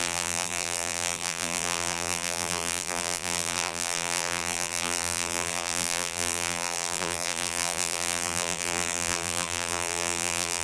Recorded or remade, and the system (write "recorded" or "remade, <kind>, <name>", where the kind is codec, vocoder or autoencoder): remade, vocoder, BigVGAN v2